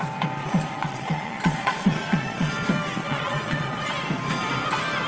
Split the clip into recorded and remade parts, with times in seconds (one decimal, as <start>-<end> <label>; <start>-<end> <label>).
0.0-0.4 recorded; 0.4-2.5 remade; 2.5-3.0 recorded; 3.0-3.9 remade; 3.9-5.1 recorded